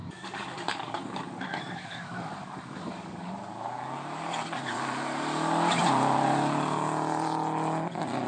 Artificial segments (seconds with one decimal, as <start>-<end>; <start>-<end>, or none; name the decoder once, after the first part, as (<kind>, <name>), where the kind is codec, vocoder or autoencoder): 0.0-3.3 (codec, DAC)